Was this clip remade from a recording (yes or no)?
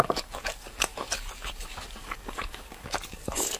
yes